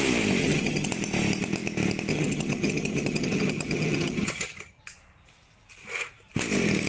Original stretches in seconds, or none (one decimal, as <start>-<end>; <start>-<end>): 0.0-0.4; 0.9-2.1; 4.8-6.9